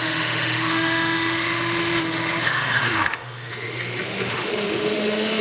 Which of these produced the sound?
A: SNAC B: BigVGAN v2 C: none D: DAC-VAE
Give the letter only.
D